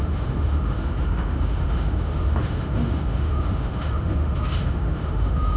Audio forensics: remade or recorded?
remade